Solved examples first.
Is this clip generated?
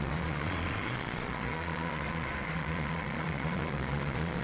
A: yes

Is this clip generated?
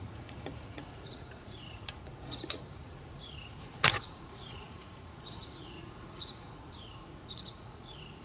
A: yes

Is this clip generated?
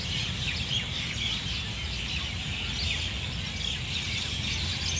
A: no